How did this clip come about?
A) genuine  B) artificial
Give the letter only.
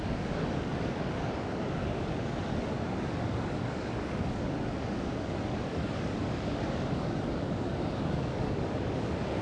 B